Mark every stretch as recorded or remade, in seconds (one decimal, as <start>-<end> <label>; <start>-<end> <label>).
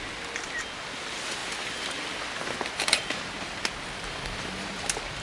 0.0-5.2 recorded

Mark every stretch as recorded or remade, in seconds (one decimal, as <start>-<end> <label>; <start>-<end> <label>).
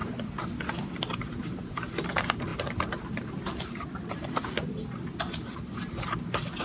0.0-6.6 recorded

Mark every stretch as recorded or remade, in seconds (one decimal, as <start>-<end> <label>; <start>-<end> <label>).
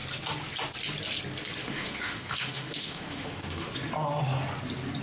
0.0-1.6 recorded; 1.6-3.7 remade; 3.7-5.0 recorded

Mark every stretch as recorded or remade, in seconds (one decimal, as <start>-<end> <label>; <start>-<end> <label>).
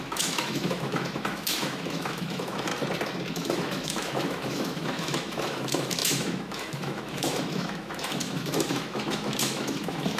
0.0-2.7 remade; 2.7-3.3 recorded; 3.3-10.2 remade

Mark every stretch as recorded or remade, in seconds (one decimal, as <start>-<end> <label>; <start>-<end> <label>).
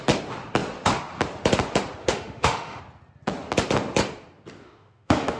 0.0-2.0 recorded; 2.0-2.8 remade; 2.8-4.6 recorded; 4.6-5.4 remade